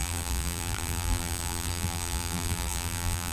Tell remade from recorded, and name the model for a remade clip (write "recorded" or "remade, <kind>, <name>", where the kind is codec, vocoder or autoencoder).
remade, vocoder, BigVGAN v2